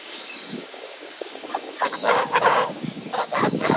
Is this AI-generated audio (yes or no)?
yes